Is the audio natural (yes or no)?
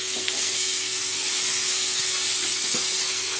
no